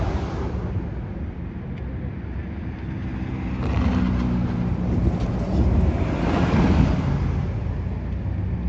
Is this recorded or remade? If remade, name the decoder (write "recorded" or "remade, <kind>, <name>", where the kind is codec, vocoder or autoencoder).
recorded